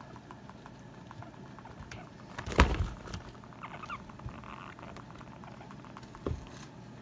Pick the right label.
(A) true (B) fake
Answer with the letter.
A